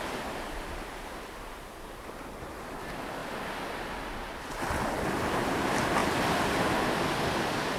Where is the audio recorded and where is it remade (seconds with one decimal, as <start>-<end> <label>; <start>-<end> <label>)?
0.0-6.0 recorded; 6.0-6.6 remade; 6.6-7.8 recorded